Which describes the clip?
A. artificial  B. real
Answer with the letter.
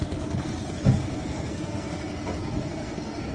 A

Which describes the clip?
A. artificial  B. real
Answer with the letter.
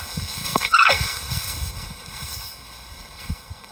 A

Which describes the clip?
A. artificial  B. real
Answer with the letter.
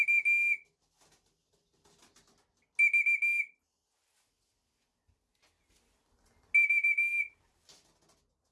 B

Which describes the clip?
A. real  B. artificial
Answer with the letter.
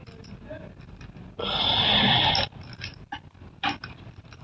A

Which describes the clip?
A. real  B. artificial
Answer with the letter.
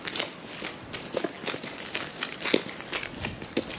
A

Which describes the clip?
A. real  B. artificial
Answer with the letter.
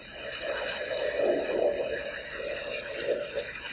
A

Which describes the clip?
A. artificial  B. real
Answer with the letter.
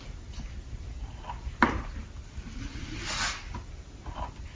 B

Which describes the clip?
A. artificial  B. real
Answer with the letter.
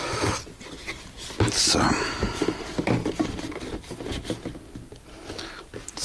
B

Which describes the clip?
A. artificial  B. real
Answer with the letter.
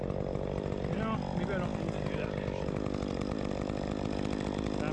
B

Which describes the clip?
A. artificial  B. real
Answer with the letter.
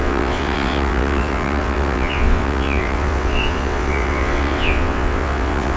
A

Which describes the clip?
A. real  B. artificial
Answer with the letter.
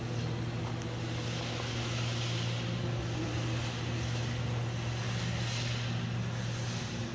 A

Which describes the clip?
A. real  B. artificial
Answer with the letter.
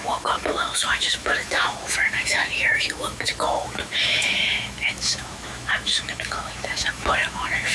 B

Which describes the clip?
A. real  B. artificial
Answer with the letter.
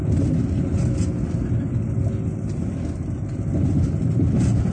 A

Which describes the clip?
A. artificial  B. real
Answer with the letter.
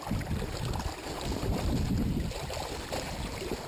B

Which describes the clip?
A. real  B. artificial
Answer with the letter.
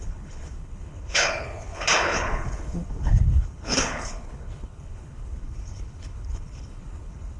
B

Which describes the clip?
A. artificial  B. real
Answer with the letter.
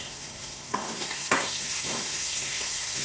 A